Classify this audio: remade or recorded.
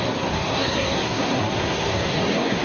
remade